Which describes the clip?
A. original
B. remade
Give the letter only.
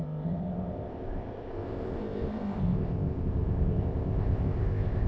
B